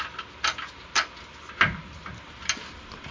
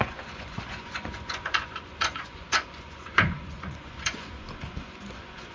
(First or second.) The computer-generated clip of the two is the second